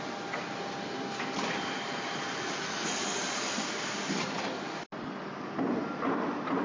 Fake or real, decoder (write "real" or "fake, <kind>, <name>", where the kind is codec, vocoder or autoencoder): real